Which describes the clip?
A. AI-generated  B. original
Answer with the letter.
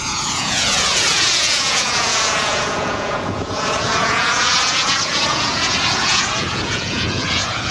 A